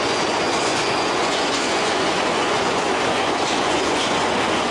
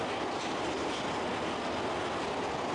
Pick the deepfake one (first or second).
first